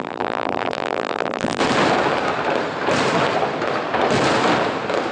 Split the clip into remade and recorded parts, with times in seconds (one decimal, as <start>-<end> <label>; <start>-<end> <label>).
0.0-1.6 remade; 1.6-5.1 recorded